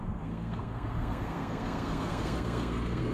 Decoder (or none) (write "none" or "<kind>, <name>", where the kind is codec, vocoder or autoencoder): codec, SNAC